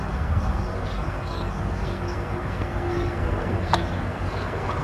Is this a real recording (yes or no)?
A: no